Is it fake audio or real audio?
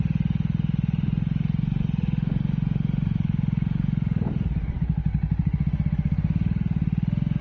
real